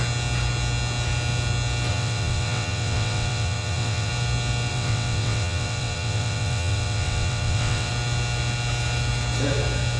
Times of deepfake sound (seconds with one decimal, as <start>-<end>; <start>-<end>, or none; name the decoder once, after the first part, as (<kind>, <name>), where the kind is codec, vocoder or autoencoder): 1.9-4.1 (vocoder, WaveNeXt); 4.7-7.9